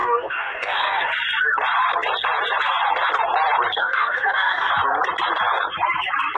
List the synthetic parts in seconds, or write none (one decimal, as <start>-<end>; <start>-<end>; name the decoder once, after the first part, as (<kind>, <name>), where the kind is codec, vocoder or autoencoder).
0.0-1.1 (codec, DAC); 3.8-4.7